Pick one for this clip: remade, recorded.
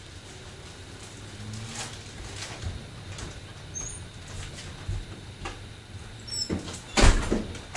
recorded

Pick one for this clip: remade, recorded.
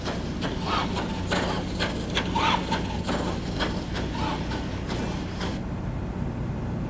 recorded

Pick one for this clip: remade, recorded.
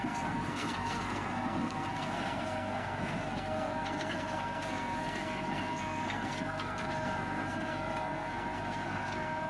remade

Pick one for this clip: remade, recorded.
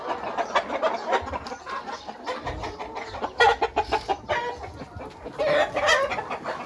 recorded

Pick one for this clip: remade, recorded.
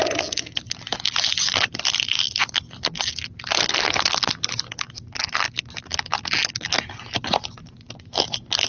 recorded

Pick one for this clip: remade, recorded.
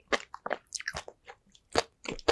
recorded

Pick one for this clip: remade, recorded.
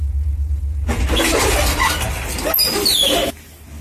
recorded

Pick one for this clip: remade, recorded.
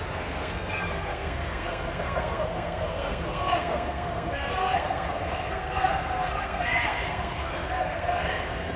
remade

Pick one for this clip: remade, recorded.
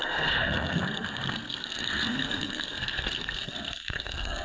remade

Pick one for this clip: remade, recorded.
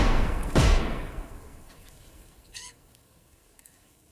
remade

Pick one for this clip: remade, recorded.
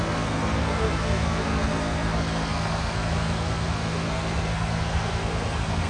remade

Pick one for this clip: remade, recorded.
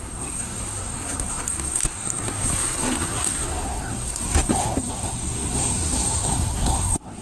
remade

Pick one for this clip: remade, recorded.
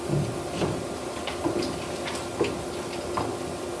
recorded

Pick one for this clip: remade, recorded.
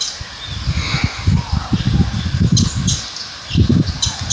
recorded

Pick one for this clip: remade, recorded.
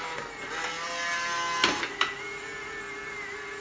recorded